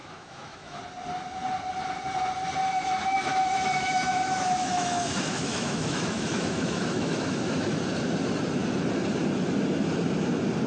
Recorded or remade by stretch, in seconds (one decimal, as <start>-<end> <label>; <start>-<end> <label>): 0.0-0.8 remade; 0.8-2.6 recorded; 2.6-7.8 remade; 7.8-10.7 recorded